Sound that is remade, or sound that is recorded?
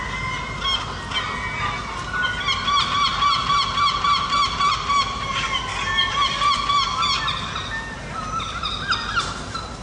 recorded